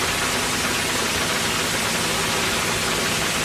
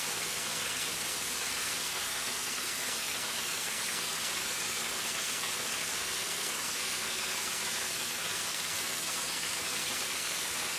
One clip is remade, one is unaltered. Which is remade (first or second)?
second